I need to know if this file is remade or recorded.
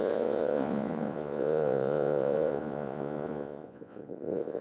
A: remade